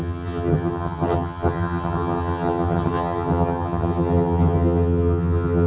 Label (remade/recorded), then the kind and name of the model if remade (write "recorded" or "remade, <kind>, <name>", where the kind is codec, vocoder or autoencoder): remade, vocoder, HiFi-GAN